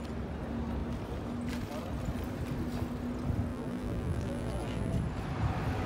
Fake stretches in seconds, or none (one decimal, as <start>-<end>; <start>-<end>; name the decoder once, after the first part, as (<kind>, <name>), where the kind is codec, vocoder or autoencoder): 3.5-4.9 (vocoder, BigVGAN v2)